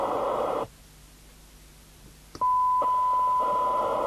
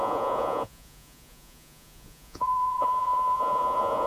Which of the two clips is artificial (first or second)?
second